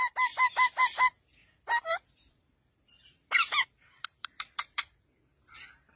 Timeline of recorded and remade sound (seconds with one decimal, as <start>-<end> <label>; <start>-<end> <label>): 0.0-1.4 recorded; 1.4-4.9 remade; 4.9-6.0 recorded